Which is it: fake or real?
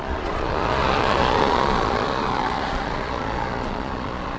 fake